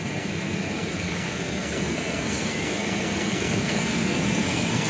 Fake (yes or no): yes